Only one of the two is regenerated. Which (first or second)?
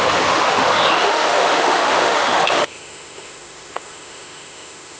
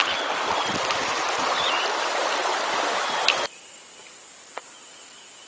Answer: first